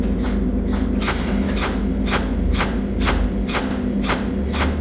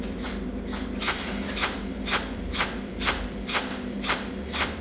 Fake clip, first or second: second